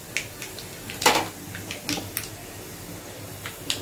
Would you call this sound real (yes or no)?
yes